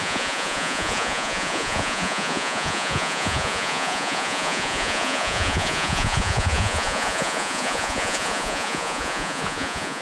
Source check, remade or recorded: remade